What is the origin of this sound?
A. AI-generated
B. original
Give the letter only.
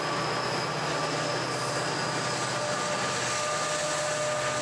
B